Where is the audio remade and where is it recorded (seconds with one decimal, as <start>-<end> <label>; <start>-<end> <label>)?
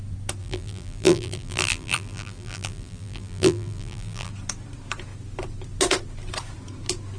0.0-0.4 recorded; 0.4-4.3 remade; 4.3-7.2 recorded